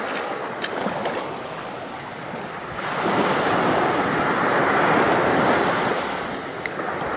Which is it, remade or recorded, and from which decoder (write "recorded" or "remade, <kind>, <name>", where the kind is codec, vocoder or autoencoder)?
recorded